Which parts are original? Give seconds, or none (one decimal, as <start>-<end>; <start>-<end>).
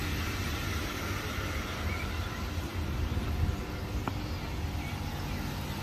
0.0-5.8